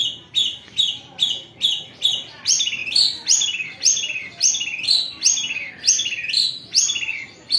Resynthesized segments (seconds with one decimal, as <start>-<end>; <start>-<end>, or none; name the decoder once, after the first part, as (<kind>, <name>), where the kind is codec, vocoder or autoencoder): 2.0-2.8 (vocoder, BigVGAN v2)